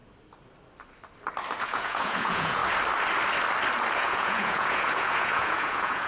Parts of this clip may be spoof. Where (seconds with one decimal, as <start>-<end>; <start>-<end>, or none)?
1.6-2.6; 4.0-6.1